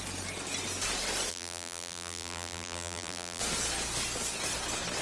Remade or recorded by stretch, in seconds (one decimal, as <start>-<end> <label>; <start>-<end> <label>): 0.0-1.3 recorded; 1.3-3.4 remade; 3.4-5.0 recorded